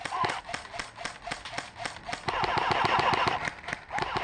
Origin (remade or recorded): recorded